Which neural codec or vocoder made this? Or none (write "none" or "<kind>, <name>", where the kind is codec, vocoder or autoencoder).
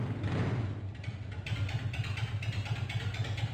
none